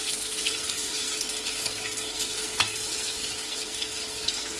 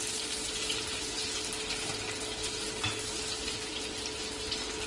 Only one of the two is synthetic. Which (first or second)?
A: first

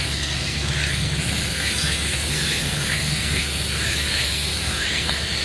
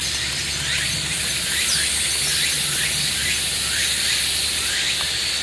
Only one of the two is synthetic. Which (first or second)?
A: first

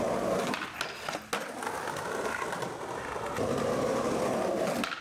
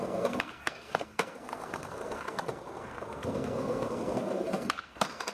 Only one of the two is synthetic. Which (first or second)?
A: second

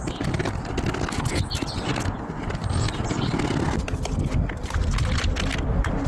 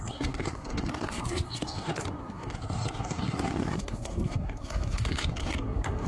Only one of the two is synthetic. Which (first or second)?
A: second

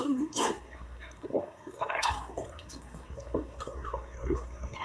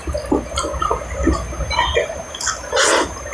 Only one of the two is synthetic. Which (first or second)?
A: first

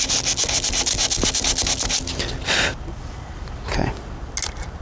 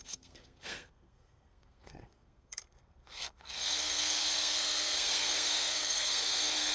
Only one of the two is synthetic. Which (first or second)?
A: second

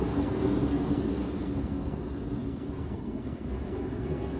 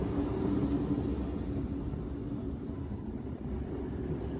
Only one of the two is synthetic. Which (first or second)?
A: first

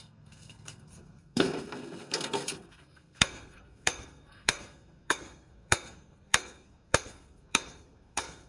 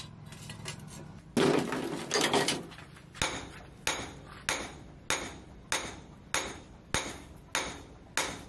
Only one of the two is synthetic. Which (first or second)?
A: first